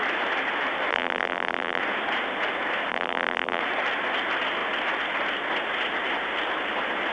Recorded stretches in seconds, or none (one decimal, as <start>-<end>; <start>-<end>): 0.0-0.9; 1.8-2.9; 3.6-7.1